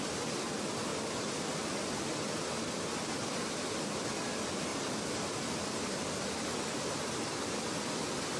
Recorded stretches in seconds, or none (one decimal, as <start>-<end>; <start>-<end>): 0.0-4.7; 5.3-8.4